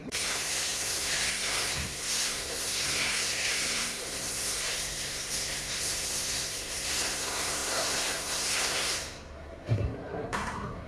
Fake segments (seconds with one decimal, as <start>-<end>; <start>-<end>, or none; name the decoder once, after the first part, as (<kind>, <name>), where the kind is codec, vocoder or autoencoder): 0.0-10.9 (codec, SNAC)